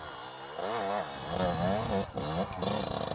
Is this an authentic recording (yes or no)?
yes